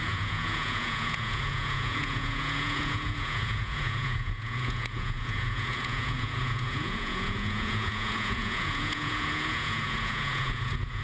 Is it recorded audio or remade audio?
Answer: remade